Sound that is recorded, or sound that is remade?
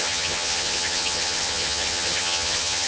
remade